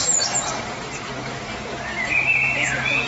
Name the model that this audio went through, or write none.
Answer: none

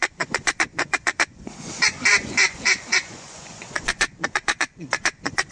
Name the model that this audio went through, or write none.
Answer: vocoder, Vocos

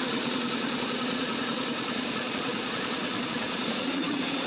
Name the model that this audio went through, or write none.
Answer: vocoder, Vocos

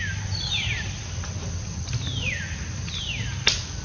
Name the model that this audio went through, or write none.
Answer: none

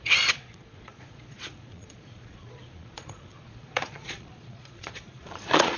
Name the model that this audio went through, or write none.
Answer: vocoder, Vocos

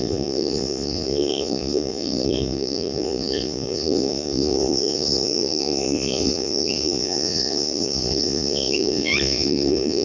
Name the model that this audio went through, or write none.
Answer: vocoder, Vocos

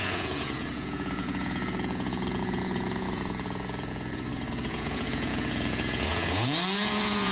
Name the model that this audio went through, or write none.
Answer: vocoder, Vocos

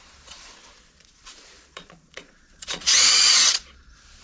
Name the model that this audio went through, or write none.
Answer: vocoder, Vocos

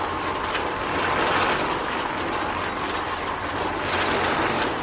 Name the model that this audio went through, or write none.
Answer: none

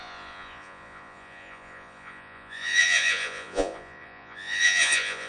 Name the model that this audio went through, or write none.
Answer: vocoder, Vocos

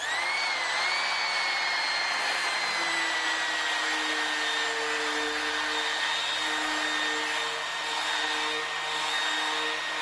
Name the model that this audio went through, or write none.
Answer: none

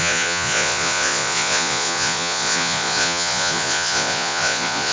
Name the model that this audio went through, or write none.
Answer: vocoder, Vocos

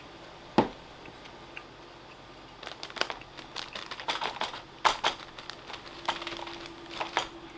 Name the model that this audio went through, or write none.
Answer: none